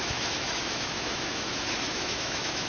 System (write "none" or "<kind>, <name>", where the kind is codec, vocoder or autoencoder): autoencoder, DAC-VAE